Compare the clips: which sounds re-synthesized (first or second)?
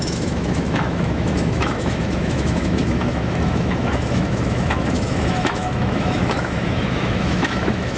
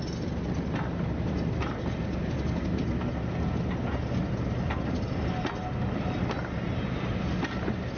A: first